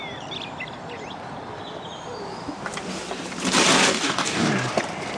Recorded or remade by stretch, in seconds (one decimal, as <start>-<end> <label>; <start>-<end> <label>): 0.0-3.9 recorded; 3.9-4.5 remade; 4.5-5.2 recorded